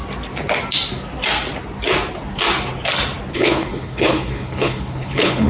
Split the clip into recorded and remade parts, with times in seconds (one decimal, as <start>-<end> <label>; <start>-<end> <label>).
0.0-3.3 recorded; 3.3-5.5 remade